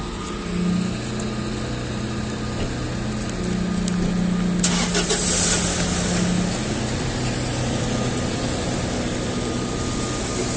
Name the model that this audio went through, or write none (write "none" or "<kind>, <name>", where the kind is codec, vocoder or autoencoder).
none